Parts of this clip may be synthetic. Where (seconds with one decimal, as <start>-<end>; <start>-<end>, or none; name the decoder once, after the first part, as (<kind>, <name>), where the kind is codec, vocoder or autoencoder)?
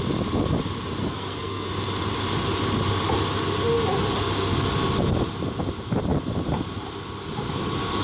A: 1.0-1.7 (codec, SNAC)